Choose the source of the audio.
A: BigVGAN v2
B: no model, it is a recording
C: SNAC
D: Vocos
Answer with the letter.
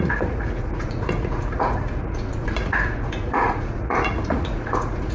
D